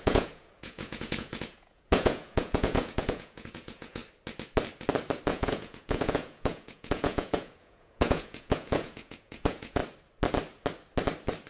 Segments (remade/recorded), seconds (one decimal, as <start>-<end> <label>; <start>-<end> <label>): 0.0-4.0 remade; 4.0-5.3 recorded; 5.3-9.8 remade; 9.8-11.5 recorded